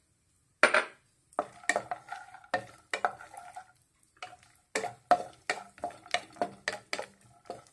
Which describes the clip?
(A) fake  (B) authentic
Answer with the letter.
B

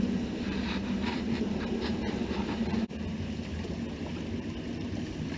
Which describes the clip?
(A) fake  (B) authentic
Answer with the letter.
B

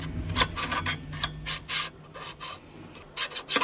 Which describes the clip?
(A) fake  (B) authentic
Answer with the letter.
B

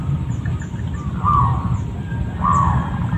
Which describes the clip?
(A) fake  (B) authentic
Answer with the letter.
B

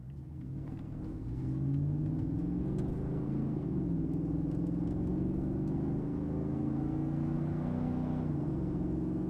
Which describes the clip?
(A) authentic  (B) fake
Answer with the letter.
B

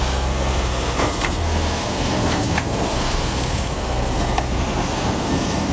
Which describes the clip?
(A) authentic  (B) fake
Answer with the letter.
B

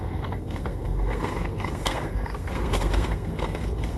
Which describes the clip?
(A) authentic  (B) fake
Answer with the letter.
B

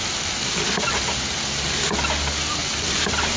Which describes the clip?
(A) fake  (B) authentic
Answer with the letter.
B